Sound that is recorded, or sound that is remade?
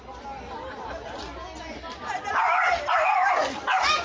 recorded